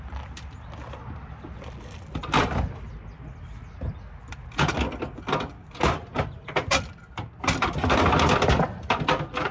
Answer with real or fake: real